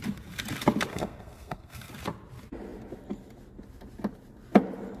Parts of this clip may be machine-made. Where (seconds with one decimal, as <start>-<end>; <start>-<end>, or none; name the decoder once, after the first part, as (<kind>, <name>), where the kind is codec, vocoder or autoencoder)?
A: 0.9-1.9 (codec, SNAC)